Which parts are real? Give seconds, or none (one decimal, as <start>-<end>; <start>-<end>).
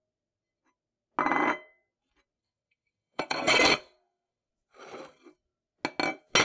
0.0-2.4; 4.5-6.4